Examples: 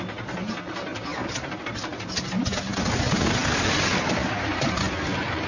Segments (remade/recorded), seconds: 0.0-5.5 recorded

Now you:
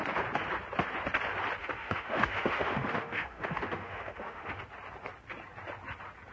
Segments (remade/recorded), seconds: 0.0-1.6 recorded; 1.6-4.6 remade; 4.6-6.3 recorded

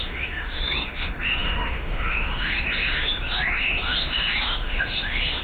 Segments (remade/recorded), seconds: 0.0-5.4 remade

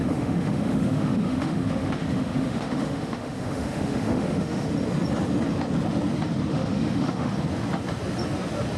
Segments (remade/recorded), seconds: 0.0-4.7 remade; 4.7-6.5 recorded; 6.5-7.3 remade; 7.3-8.8 recorded

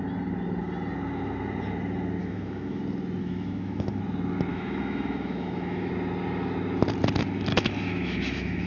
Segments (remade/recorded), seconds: 0.0-2.2 recorded; 2.2-2.8 remade; 2.8-3.2 recorded; 3.2-4.0 remade; 4.0-4.5 recorded; 4.5-5.9 remade; 5.9-7.5 recorded; 7.5-8.7 remade